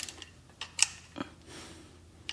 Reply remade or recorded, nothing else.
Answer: recorded